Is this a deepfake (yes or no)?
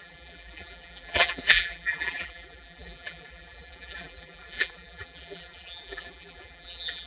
yes